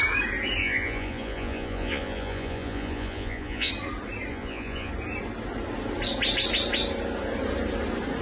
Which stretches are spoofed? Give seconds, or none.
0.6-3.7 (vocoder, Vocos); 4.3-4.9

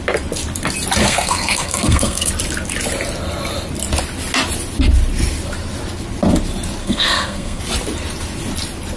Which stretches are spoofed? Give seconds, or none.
1.0-2.3 (codec, SNAC); 6.8-7.6

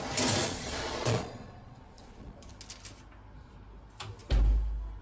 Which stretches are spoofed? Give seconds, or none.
0.4-2.5 (vocoder, Vocos)

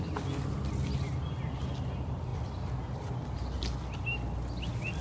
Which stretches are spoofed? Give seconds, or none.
none

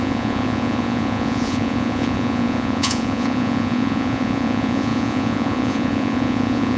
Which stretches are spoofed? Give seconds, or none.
0.0-6.8 (vocoder, Vocos)